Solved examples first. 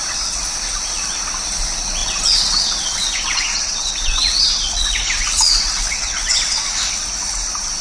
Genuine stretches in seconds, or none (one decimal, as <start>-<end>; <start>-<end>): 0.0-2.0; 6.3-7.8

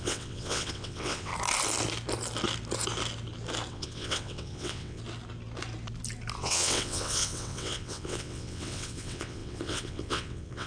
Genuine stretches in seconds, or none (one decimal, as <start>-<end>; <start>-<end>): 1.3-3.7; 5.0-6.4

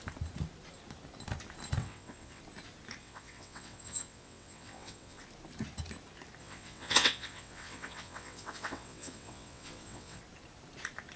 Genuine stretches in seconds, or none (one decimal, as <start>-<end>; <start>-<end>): 0.0-1.8; 2.4-3.0; 5.2-6.4; 10.2-11.2

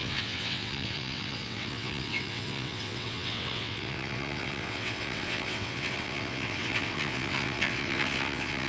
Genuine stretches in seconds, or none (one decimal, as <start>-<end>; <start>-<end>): none